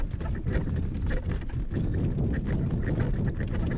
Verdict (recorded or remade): recorded